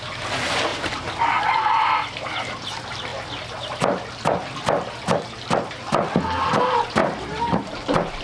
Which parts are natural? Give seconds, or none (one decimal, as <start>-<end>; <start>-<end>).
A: 0.0-0.7; 1.4-7.0

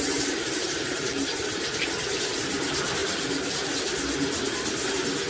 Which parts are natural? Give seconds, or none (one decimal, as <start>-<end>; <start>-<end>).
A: 0.0-1.4; 2.5-3.0; 4.7-5.3